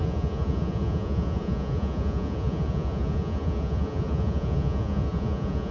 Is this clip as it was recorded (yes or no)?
no